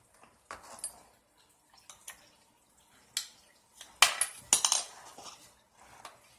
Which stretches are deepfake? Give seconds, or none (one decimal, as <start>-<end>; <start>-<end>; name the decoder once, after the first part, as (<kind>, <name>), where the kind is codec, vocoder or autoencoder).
none